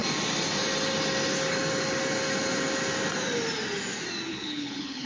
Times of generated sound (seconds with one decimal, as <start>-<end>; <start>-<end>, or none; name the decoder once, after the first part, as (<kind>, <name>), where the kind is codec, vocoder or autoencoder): 4.3-5.1 (codec, HILCodec)